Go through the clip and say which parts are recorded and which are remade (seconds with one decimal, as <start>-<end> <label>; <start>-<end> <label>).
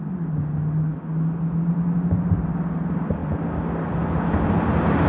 0.0-5.1 recorded